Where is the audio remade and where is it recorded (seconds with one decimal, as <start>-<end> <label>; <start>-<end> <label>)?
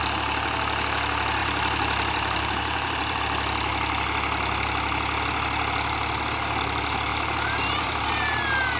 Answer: 0.0-1.4 recorded; 1.4-3.2 remade; 3.2-7.1 recorded; 7.1-8.4 remade; 8.4-8.8 recorded